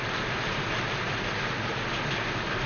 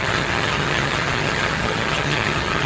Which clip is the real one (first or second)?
first